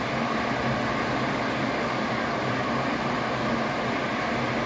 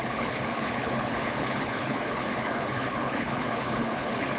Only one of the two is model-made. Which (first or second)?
second